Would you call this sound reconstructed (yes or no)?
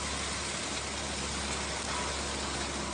no